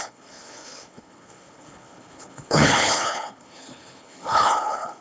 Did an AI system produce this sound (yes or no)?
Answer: yes